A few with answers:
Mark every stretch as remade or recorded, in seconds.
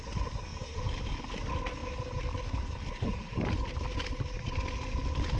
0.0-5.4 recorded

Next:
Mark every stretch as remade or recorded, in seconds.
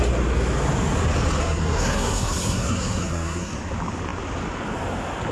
0.0-1.4 recorded; 1.4-3.5 remade; 3.5-5.3 recorded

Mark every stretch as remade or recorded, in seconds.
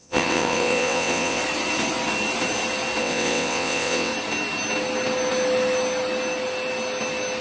0.0-1.4 remade; 1.4-3.0 recorded; 3.0-4.1 remade; 4.1-7.4 recorded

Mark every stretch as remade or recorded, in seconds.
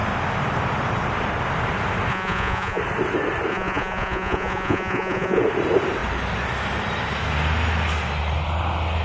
0.0-2.1 recorded; 2.1-2.8 remade; 2.8-3.5 recorded; 3.5-5.4 remade; 5.4-9.0 recorded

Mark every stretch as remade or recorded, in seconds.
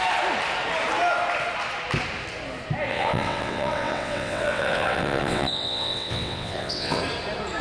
0.0-2.9 recorded; 2.9-7.0 remade; 7.0-7.6 recorded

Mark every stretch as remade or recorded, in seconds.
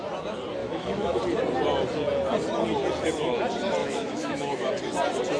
0.0-0.6 recorded; 0.6-1.2 remade; 1.2-3.8 recorded; 3.8-4.7 remade; 4.7-5.4 recorded